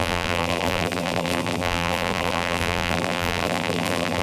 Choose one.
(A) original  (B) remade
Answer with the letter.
B